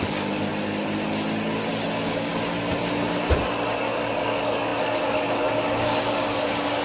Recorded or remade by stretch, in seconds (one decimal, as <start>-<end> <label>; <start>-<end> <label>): 0.0-0.5 remade; 0.5-1.9 recorded; 1.9-2.3 remade; 2.3-3.8 recorded; 3.8-6.8 remade